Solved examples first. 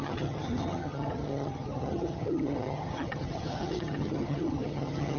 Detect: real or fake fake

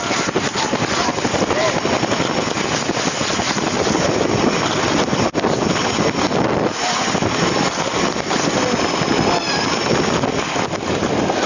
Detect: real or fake real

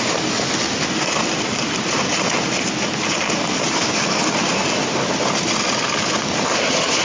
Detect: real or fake real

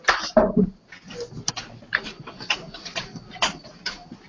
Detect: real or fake real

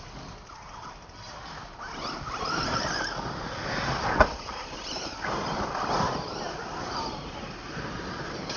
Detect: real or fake real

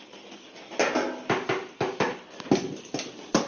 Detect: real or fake real